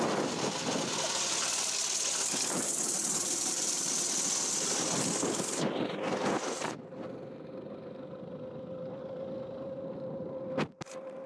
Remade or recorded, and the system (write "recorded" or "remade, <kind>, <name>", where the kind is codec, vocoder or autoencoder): recorded